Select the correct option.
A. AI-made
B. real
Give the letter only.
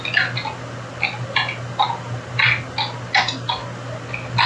B